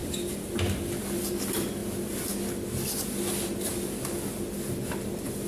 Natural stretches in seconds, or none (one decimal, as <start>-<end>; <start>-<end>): 0.0-5.5